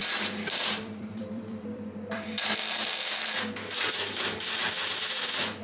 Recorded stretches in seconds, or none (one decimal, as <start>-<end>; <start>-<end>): 2.3-5.6

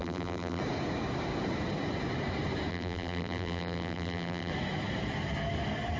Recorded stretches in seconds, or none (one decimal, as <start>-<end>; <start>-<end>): 0.6-2.7; 4.5-6.0

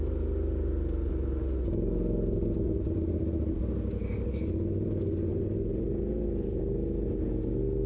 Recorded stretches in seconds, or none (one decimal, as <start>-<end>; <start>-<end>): 0.0-7.9

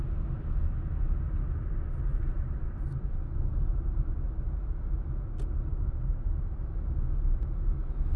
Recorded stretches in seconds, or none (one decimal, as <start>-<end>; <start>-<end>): 0.0-2.3; 4.5-5.7; 6.7-8.2

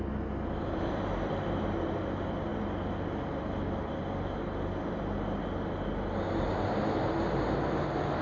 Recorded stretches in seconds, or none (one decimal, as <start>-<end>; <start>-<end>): 0.0-8.2

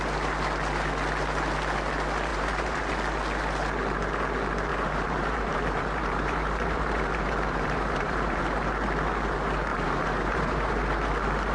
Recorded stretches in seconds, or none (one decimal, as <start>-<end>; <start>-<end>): 0.0-2.3; 2.9-4.7; 8.4-9.7; 10.7-11.5

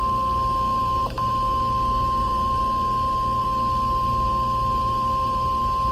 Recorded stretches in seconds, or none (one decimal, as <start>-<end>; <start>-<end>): 0.0-0.7; 2.6-3.4

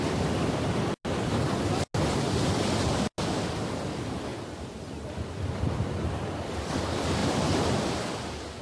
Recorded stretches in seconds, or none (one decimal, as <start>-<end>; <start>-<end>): 0.0-8.6